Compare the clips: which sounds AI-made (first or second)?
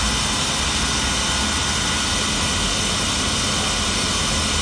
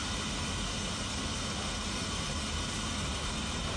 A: second